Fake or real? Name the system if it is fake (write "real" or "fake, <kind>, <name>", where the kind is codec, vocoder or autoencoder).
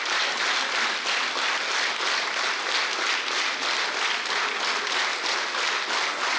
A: real